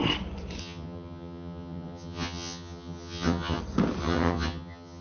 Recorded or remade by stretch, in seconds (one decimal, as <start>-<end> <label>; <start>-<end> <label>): 0.0-0.6 recorded; 0.6-3.6 remade; 3.6-4.0 recorded; 4.0-5.0 remade